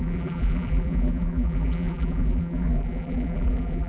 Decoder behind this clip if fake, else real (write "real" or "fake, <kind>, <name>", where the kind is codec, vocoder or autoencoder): fake, vocoder, BigVGAN v2